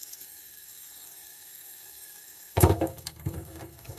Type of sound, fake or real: fake